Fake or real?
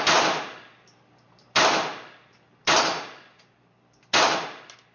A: real